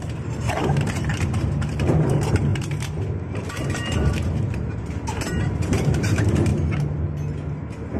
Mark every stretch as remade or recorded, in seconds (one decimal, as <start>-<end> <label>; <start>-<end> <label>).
0.0-6.5 remade; 6.5-8.0 recorded